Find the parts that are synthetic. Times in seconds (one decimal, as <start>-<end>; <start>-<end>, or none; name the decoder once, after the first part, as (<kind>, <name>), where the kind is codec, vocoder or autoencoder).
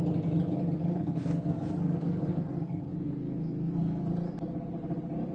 0.9-4.1 (codec, SNAC)